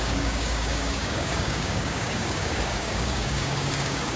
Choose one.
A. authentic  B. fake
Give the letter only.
B